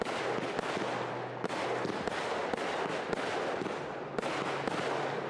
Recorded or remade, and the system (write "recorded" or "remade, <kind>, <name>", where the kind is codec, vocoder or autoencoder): recorded